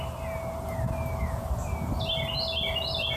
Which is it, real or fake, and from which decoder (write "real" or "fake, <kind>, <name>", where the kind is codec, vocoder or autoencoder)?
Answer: real